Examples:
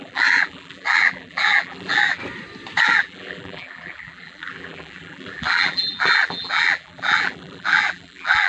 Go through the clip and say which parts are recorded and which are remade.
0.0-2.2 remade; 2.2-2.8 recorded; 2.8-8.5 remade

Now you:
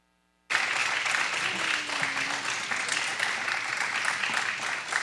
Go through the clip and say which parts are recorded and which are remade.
0.0-5.0 recorded

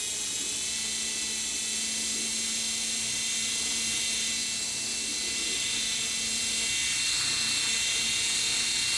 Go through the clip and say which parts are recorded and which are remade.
0.0-9.0 recorded